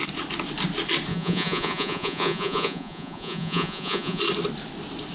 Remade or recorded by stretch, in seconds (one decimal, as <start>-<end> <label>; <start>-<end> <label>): 0.0-1.1 recorded; 1.1-4.2 remade; 4.2-5.1 recorded